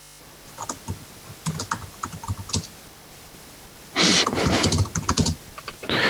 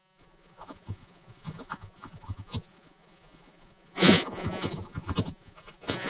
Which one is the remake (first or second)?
second